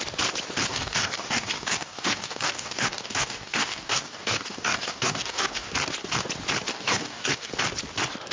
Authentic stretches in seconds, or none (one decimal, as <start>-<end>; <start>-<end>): 0.0-0.7; 5.7-6.7; 7.5-8.3